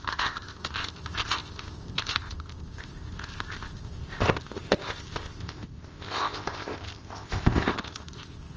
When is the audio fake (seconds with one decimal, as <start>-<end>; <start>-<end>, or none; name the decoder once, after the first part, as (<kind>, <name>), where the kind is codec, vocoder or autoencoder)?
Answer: 0.0-8.6 (codec, ZipCodec)